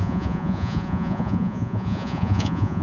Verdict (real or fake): fake